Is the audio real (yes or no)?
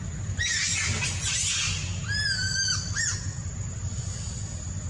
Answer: yes